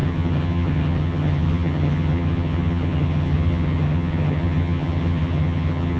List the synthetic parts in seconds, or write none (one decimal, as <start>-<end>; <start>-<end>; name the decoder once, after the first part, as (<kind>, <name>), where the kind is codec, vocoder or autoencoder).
0.0-6.0 (vocoder, HiFi-GAN)